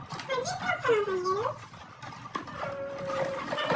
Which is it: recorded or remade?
recorded